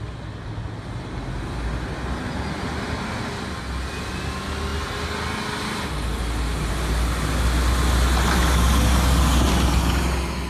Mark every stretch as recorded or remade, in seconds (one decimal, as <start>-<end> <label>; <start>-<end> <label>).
0.0-10.5 recorded